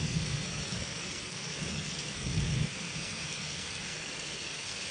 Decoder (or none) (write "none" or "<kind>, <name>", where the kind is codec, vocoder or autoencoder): codec, SNAC